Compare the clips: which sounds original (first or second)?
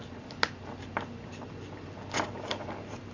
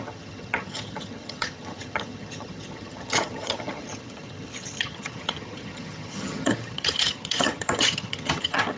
first